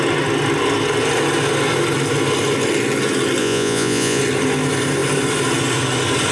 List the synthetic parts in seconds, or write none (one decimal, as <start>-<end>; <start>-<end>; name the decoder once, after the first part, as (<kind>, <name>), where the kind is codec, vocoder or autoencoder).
3.4-4.2 (vocoder, Vocos)